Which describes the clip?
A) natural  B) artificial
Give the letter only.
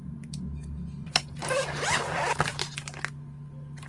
A